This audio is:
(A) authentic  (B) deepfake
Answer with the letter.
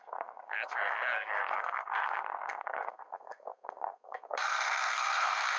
B